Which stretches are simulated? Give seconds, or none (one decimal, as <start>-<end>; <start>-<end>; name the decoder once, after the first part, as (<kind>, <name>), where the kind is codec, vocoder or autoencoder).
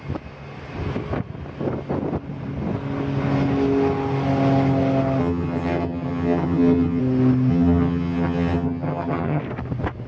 5.2-7.0 (vocoder, HiFi-GAN); 7.5-9.4